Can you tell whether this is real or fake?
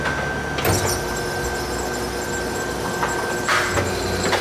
real